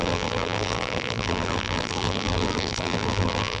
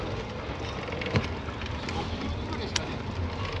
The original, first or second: second